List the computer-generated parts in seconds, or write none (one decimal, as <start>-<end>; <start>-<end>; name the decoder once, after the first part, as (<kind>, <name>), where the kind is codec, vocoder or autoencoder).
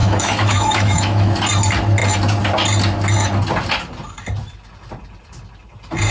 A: 0.0-1.4 (autoencoder, DAC-VAE)